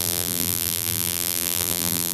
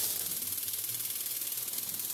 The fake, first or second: first